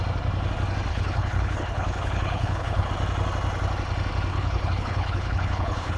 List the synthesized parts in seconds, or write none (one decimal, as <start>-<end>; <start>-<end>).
0.9-2.9; 4.3-6.0